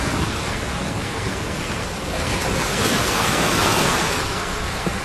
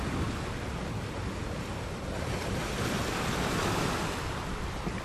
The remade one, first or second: first